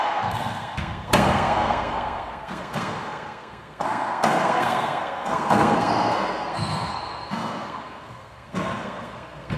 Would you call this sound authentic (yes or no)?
no